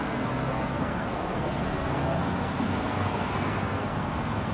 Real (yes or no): no